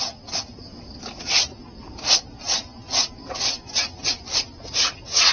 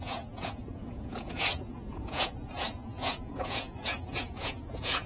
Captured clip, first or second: first